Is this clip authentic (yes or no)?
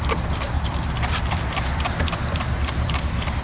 no